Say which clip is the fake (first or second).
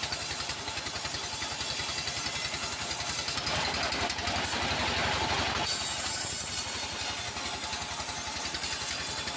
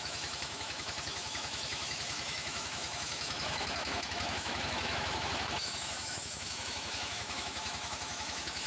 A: second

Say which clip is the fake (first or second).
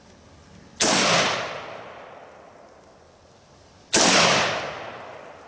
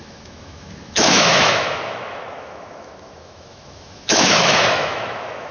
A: second